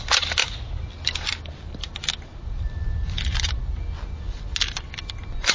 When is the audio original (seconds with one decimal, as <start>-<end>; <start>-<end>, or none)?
0.0-0.4; 0.9-5.5